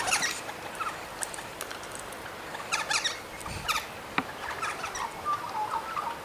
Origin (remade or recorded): recorded